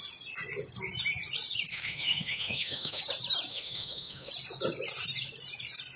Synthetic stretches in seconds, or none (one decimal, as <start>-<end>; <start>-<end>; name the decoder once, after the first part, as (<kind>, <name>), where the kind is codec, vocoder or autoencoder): 1.7-3.0 (autoencoder, DAC-VAE); 3.5-4.3

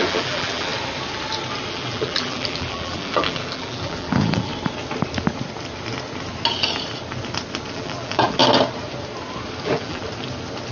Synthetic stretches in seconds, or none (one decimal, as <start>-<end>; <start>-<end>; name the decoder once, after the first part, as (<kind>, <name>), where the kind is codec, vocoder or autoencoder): 0.0-0.7 (vocoder, BigVGAN v2); 1.7-4.5; 7.7-8.4; 9.6-10.0

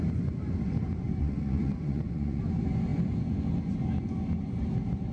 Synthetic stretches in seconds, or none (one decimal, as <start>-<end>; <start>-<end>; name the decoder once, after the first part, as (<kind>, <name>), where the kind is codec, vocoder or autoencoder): 1.2-2.4 (vocoder, Vocos)

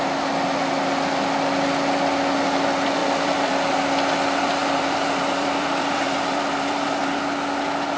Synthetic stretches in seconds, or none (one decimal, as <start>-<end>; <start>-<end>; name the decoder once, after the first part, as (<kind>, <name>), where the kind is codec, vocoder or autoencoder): 3.0-3.5 (vocoder, BigVGAN v2); 4.6-7.1

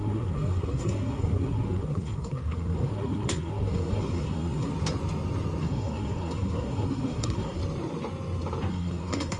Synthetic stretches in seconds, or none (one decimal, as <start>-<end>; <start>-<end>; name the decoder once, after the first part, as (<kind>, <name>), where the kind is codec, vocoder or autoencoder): 0.0-4.7 (codec, SNAC); 5.6-7.6; 8.7-9.4

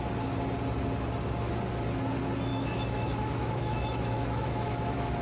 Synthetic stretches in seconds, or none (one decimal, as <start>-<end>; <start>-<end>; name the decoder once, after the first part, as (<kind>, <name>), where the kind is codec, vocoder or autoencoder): 2.5-5.2 (autoencoder, DAC-VAE)